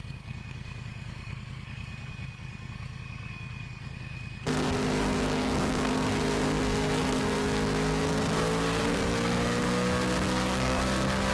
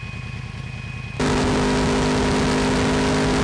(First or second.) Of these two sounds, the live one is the second